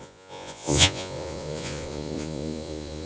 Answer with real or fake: fake